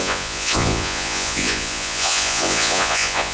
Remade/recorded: remade